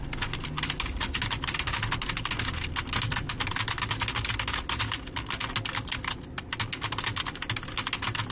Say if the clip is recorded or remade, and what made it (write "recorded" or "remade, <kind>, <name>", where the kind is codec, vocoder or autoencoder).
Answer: recorded